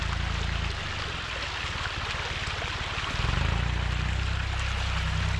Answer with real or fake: real